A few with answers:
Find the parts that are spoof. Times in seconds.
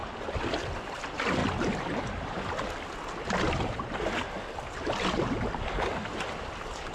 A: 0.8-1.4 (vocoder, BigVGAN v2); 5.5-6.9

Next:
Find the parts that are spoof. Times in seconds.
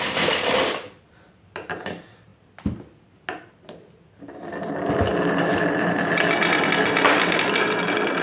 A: none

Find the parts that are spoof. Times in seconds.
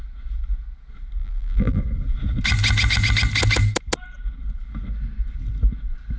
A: 1.2-1.8 (vocoder, BigVGAN v2)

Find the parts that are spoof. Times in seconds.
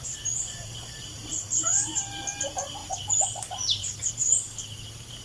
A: none